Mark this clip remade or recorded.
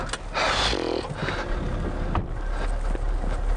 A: recorded